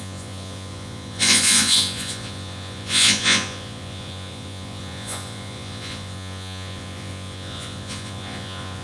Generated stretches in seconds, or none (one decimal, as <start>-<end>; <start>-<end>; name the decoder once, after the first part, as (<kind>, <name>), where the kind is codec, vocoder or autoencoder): 0.0-8.8 (vocoder, Vocos)